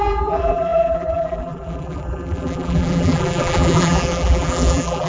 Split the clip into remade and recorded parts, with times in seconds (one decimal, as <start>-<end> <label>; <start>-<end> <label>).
0.0-5.1 remade